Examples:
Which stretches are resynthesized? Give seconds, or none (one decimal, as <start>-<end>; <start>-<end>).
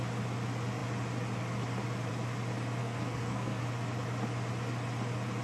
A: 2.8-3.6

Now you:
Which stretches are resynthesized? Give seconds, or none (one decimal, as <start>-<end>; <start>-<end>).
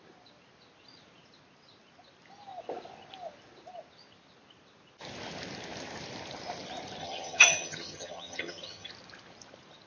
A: 7.0-8.9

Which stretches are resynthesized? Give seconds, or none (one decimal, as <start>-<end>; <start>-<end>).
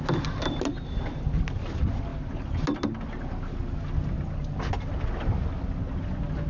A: none